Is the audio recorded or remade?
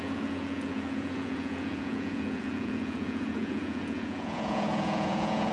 remade